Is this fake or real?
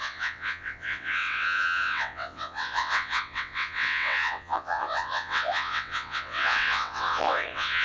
fake